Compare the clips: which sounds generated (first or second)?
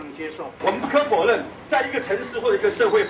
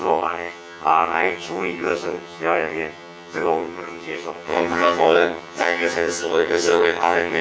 second